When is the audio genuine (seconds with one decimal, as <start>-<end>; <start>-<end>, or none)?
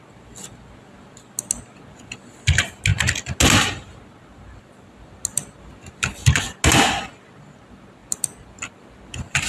0.0-9.5